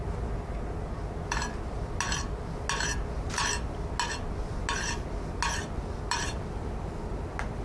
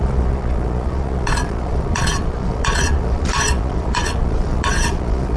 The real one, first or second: first